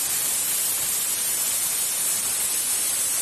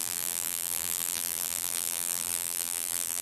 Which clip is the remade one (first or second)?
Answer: second